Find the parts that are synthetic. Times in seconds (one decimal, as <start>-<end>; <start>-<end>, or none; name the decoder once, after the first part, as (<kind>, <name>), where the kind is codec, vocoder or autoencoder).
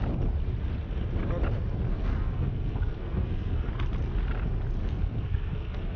1.9-3.7 (codec, SNAC); 4.8-6.0